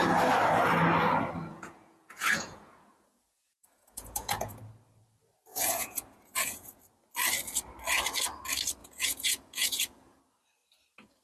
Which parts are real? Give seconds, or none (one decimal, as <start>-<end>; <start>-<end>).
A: 0.0-1.5; 4.6-5.5; 6.8-8.8; 10.2-11.2